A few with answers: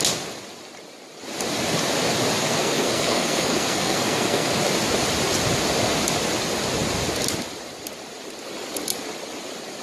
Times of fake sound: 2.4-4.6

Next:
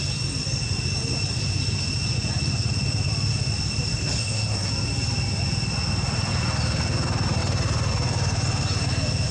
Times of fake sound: 4.2-4.7

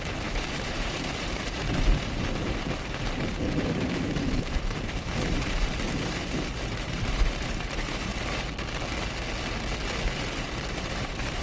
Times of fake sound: 0.0-8.1; 10.8-11.4

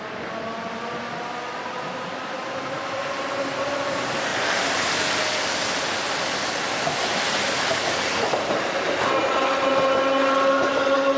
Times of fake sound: none